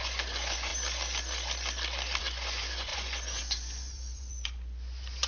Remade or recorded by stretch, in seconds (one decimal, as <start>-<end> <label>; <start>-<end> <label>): 0.0-0.7 remade; 0.7-2.2 recorded; 2.2-5.3 remade